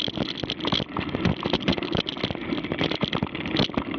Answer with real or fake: real